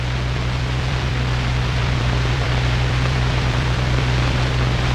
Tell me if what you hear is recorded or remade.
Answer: remade